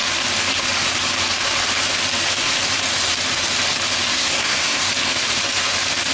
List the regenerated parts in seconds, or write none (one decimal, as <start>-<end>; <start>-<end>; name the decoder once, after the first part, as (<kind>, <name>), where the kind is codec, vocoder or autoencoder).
4.1-4.9 (codec, SNAC)